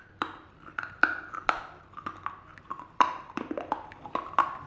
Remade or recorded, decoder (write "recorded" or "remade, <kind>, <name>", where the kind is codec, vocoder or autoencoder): remade, vocoder, BigVGAN v2